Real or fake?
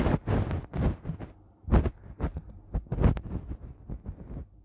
real